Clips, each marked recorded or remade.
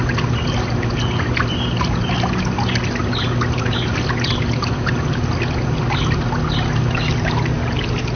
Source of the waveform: recorded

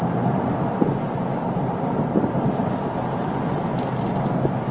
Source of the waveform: recorded